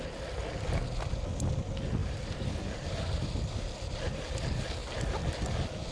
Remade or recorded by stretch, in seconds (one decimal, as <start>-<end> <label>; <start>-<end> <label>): 0.0-2.0 recorded; 2.0-2.5 remade; 2.5-5.9 recorded